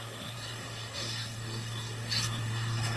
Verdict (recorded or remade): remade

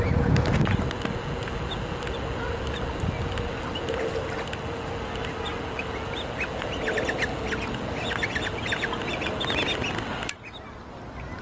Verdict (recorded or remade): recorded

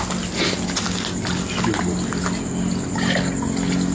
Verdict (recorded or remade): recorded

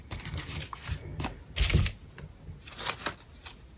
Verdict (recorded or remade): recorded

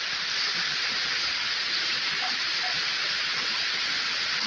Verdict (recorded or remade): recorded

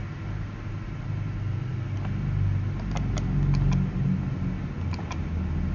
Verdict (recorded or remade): recorded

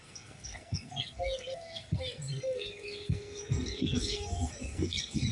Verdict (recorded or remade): remade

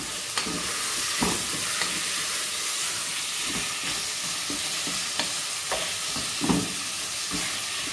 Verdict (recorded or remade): recorded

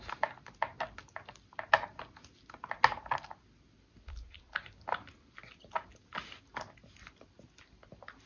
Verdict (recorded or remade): recorded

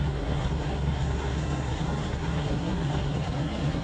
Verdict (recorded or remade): remade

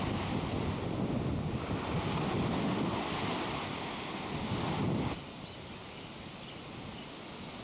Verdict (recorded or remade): recorded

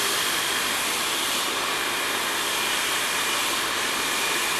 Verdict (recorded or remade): recorded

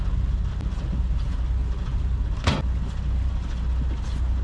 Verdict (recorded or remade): recorded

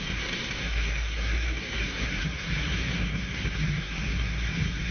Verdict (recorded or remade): remade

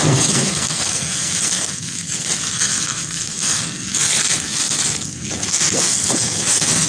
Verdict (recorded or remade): remade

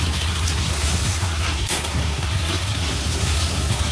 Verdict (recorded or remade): remade